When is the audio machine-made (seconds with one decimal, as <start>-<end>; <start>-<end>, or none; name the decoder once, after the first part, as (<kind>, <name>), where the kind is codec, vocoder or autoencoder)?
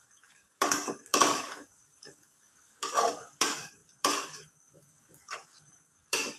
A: 0.0-6.4 (codec, DAC)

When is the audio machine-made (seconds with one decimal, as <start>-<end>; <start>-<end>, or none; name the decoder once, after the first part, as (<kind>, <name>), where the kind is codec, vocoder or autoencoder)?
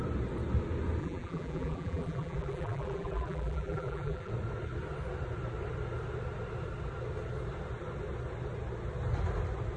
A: 1.0-4.3 (vocoder, BigVGAN v2)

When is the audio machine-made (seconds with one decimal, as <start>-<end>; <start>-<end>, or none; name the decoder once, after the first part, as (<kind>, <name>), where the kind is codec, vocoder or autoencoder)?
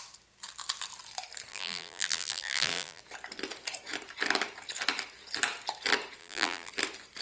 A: 1.5-3.0 (vocoder, BigVGAN v2); 6.2-6.7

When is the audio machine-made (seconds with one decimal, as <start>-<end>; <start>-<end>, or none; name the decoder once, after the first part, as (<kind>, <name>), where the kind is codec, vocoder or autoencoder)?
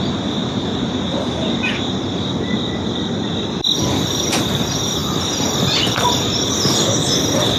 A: 0.4-1.9 (vocoder, BigVGAN v2)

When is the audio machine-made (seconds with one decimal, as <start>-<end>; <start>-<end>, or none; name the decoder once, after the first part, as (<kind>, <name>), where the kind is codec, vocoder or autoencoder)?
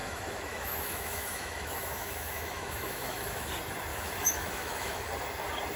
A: 0.0-3.5 (autoencoder, DAC-VAE); 3.9-5.1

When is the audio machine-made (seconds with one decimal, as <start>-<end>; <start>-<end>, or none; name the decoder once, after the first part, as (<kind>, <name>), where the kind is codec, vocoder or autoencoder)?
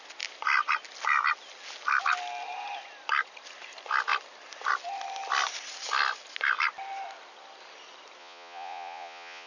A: 8.2-9.5 (vocoder, Vocos)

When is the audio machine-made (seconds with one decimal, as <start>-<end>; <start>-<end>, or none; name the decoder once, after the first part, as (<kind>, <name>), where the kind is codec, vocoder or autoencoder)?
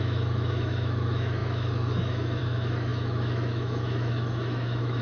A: 0.0-5.0 (autoencoder, DAC-VAE)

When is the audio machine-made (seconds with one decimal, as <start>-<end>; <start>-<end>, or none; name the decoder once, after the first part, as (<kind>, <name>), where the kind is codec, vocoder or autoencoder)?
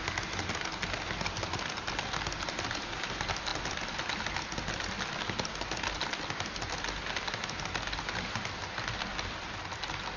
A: none